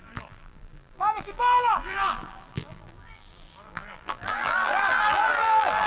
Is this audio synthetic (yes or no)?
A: yes